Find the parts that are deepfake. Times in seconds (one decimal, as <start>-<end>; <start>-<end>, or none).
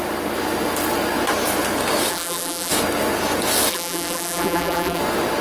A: 2.1-2.7; 3.7-5.0